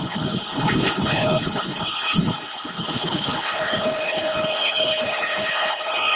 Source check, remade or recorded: remade